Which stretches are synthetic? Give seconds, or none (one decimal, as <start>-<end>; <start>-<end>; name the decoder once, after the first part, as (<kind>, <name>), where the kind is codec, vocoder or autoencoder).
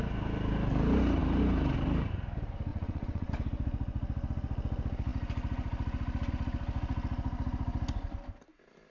2.7-3.3 (vocoder, WaveNeXt)